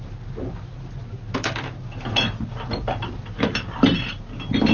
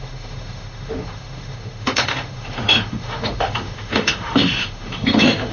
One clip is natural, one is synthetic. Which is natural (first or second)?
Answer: first